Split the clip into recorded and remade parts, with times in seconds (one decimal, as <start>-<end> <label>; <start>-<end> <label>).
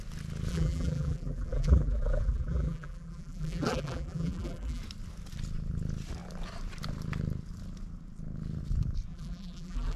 0.0-0.5 recorded; 0.5-4.8 remade; 4.8-9.1 recorded; 9.1-10.0 remade